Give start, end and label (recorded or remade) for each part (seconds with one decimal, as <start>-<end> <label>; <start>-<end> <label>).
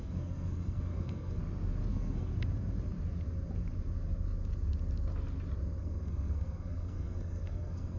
0.0-1.4 remade; 1.4-1.9 recorded; 1.9-2.3 remade; 2.3-5.8 recorded; 5.8-8.0 remade